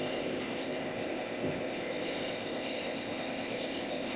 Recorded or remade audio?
remade